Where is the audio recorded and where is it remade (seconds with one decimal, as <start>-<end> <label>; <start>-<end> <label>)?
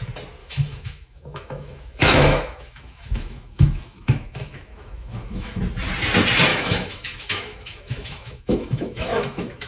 0.0-0.4 recorded; 0.4-5.6 remade; 5.6-6.5 recorded; 6.5-9.7 remade